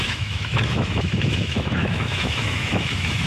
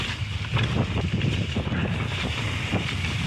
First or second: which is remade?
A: first